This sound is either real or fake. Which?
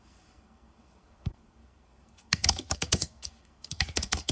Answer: fake